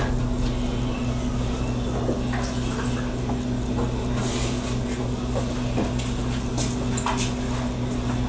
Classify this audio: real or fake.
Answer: real